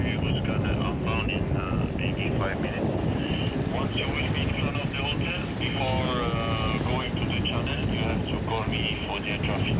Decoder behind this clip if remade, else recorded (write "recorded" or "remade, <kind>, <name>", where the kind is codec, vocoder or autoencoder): recorded